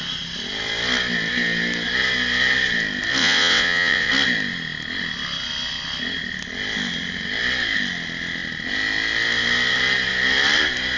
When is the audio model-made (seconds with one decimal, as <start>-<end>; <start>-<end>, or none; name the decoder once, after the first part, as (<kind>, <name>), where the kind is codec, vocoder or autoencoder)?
3.2-4.1 (vocoder, WaveNeXt)